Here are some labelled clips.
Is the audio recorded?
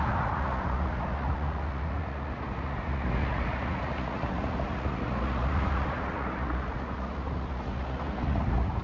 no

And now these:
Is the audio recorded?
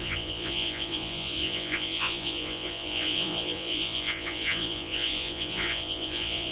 no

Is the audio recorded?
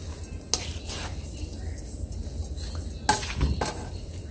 yes